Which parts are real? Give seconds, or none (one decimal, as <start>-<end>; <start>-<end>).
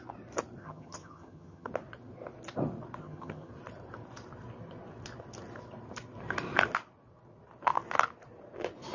0.0-0.6; 1.7-3.0; 3.5-8.9